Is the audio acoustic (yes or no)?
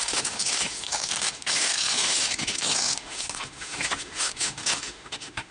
no